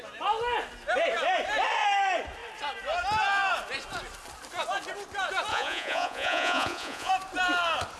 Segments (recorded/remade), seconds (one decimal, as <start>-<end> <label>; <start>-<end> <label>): 0.0-5.5 recorded; 5.5-7.1 remade; 7.1-8.0 recorded